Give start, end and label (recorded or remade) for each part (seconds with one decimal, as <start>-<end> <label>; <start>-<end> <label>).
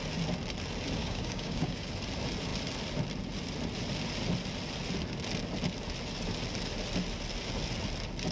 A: 0.0-1.0 recorded; 1.0-1.9 remade; 1.9-8.3 recorded